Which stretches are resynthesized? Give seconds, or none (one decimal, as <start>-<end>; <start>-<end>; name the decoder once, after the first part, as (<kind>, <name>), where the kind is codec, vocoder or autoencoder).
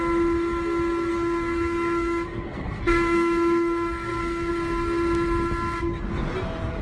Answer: 1.1-4.5 (codec, SNAC)